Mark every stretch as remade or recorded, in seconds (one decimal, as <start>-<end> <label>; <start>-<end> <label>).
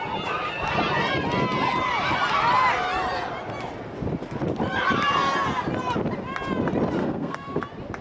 0.0-7.0 recorded; 7.0-7.6 remade; 7.6-8.0 recorded